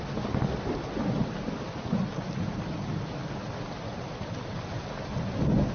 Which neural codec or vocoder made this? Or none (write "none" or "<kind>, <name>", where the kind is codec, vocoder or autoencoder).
none